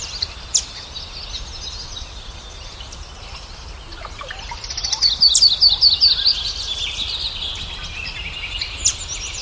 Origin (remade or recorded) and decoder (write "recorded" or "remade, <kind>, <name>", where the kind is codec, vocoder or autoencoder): recorded